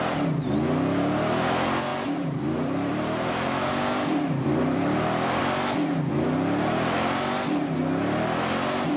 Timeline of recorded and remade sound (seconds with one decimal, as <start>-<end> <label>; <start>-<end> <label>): 0.0-1.9 recorded; 1.9-5.4 remade; 5.4-9.0 recorded